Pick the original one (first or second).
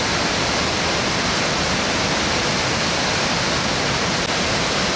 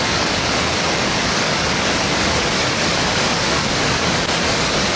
first